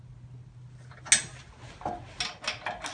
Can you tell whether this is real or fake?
real